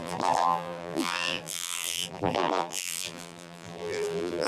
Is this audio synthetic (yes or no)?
yes